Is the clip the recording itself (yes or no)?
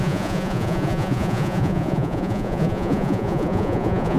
no